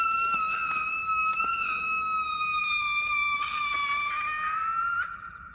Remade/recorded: recorded